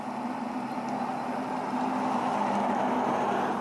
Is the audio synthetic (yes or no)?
no